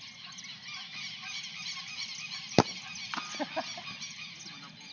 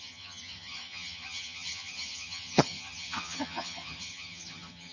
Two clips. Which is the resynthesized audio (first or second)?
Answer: second